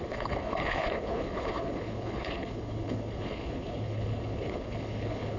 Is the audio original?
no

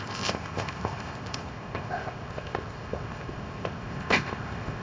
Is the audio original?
no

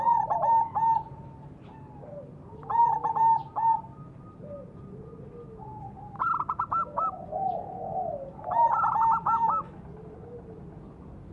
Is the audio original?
no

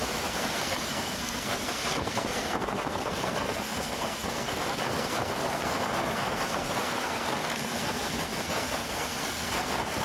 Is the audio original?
no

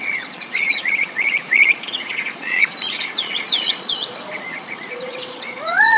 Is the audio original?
no